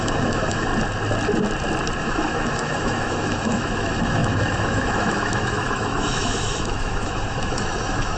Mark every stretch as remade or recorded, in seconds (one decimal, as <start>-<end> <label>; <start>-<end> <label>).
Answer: 0.0-0.7 remade; 0.7-2.0 recorded; 2.0-8.2 remade